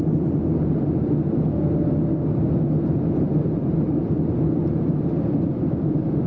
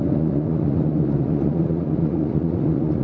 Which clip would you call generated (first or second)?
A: second